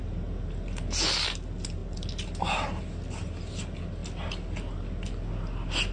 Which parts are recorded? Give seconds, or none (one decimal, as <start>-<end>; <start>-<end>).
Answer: 0.0-5.9